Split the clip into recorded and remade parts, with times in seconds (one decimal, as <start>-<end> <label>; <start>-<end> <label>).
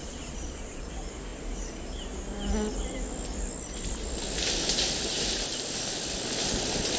0.0-0.9 remade; 0.9-7.0 recorded